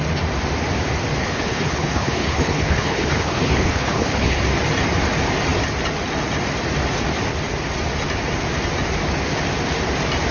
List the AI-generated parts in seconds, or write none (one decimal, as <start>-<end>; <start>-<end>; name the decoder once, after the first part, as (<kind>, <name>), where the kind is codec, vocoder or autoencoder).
1.2-4.4 (codec, HILCodec)